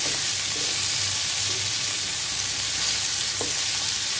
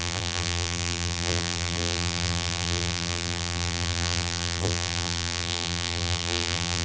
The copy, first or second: second